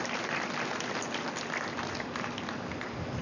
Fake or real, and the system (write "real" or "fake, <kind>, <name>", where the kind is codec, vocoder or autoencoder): real